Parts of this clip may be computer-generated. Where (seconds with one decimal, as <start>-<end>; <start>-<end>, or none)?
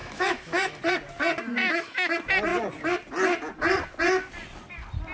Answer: 0.0-0.8; 1.6-2.1